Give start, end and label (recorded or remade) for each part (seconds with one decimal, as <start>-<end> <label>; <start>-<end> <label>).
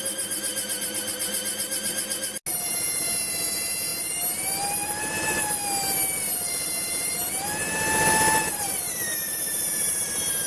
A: 0.0-10.5 recorded